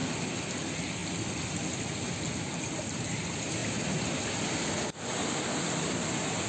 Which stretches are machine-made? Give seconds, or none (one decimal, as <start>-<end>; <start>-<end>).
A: 0.5-1.0; 2.7-3.6; 4.9-6.5